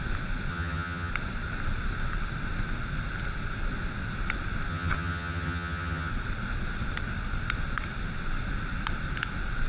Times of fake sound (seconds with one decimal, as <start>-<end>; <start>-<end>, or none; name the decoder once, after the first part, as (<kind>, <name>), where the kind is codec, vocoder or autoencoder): 0.5-1.1 (vocoder, HiFi-GAN); 4.7-6.1